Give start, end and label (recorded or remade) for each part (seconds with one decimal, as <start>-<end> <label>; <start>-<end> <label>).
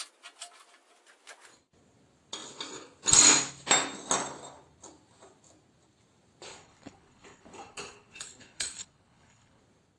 0.0-6.5 recorded; 6.5-9.6 remade; 9.6-10.0 recorded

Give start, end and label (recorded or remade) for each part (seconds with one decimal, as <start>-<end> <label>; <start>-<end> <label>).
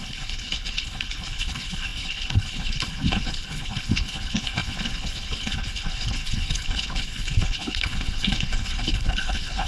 0.0-9.7 remade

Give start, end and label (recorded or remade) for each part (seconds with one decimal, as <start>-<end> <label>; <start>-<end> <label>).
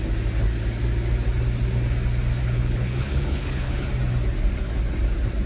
0.0-2.4 recorded; 2.4-3.8 remade; 3.8-5.5 recorded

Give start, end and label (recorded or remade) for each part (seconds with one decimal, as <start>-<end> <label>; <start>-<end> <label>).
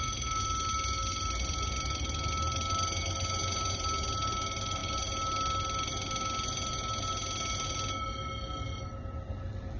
0.0-9.8 recorded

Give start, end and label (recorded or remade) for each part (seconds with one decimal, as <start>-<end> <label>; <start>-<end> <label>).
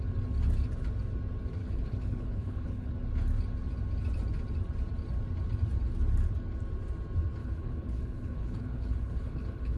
0.0-1.6 recorded; 1.6-2.9 remade; 2.9-7.4 recorded; 7.4-9.8 remade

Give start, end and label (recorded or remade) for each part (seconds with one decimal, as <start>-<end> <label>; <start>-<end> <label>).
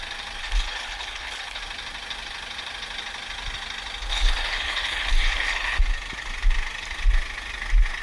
0.0-0.4 recorded; 0.4-1.6 remade; 1.6-4.1 recorded; 4.1-5.8 remade; 5.8-8.0 recorded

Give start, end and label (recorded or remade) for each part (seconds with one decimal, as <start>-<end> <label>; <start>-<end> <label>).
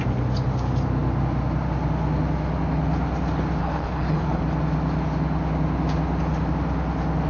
0.0-3.6 recorded; 3.6-4.4 remade; 4.4-7.3 recorded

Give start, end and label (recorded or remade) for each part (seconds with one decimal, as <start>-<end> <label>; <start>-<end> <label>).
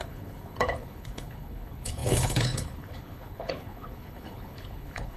0.0-5.2 remade